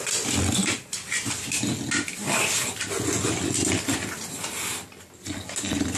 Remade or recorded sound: recorded